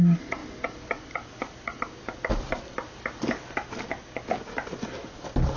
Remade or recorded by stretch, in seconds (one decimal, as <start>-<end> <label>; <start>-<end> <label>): 0.0-5.6 recorded